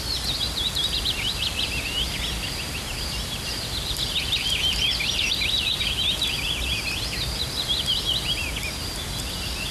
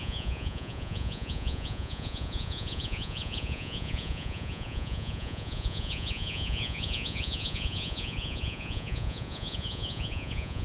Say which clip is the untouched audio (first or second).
first